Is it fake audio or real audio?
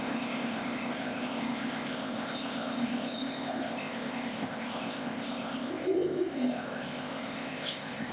fake